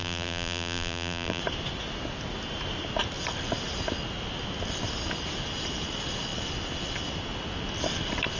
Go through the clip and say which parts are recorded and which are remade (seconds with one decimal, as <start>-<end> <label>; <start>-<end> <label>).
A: 0.0-1.4 remade; 1.4-8.4 recorded